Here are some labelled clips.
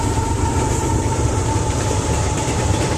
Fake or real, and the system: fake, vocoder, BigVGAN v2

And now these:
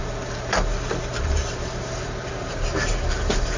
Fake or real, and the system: fake, vocoder, BigVGAN v2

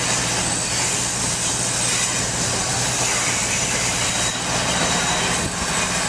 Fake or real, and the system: real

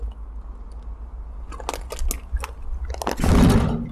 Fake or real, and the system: real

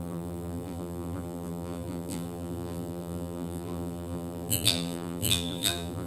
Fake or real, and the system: fake, vocoder, BigVGAN v2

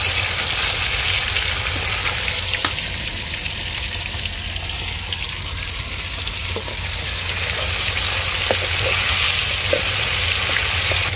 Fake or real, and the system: real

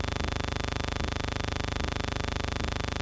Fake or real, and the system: real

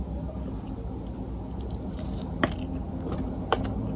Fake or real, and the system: real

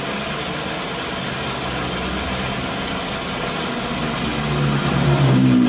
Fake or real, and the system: real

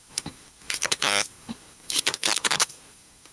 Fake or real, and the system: fake, codec, SNAC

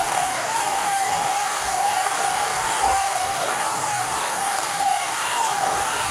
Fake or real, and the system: fake, codec, DAC